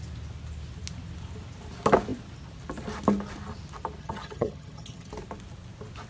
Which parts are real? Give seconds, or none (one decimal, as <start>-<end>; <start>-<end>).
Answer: 0.0-4.0; 5.1-6.1